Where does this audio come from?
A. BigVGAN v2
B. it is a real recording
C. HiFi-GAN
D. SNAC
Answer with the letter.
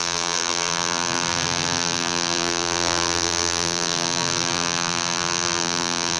A